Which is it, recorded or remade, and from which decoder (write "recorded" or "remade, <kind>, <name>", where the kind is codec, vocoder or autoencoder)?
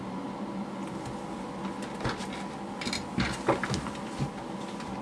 recorded